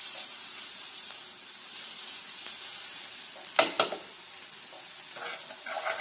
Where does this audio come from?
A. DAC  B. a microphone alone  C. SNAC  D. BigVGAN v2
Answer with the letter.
B